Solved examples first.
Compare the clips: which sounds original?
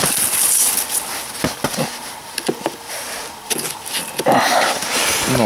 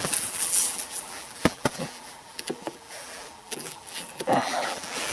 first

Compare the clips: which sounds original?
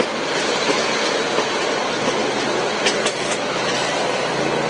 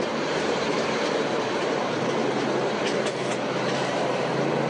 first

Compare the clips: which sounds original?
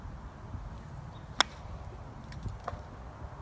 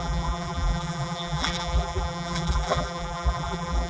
first